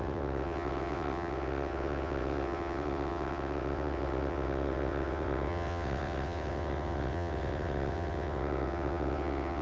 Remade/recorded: remade